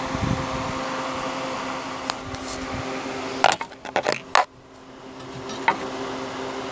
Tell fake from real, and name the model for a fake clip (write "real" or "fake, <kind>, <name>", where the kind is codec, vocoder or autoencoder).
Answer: real